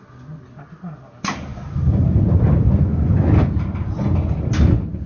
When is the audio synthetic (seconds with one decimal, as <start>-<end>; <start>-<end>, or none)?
none